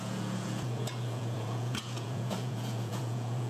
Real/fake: fake